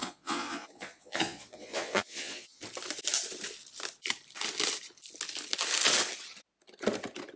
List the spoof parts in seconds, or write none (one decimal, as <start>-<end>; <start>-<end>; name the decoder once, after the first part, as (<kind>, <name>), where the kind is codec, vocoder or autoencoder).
0.0-2.6 (vocoder, Vocos)